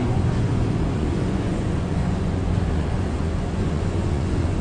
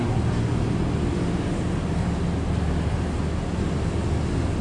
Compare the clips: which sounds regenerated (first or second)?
first